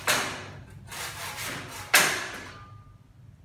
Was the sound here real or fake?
real